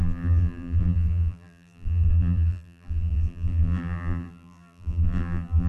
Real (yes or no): no